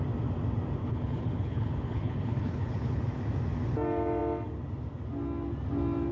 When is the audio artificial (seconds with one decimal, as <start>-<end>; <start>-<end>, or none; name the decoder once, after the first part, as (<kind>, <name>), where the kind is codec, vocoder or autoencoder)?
0.8-3.0 (codec, HILCodec)